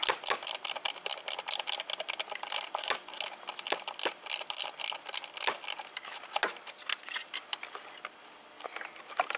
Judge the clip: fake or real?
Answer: real